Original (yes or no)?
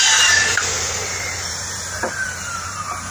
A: no